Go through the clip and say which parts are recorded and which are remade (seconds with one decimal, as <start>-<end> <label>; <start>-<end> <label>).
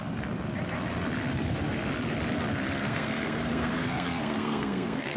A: 0.0-2.9 recorded; 2.9-5.2 remade